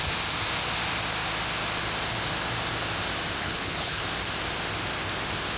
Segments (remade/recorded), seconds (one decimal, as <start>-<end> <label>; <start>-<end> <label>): 0.0-3.4 recorded; 3.4-4.0 remade; 4.0-5.6 recorded